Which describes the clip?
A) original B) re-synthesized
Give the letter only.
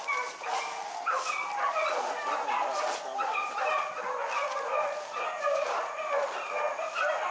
A